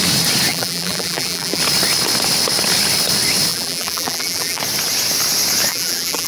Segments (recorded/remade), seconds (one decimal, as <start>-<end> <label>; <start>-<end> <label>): 0.0-0.5 recorded; 0.5-1.6 remade; 1.6-3.5 recorded; 3.5-4.6 remade; 4.6-5.7 recorded; 5.7-6.3 remade